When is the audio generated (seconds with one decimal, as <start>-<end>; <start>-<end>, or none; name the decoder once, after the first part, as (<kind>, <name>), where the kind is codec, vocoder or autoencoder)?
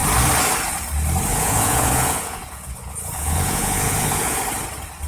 1.3-4.4 (vocoder, Vocos)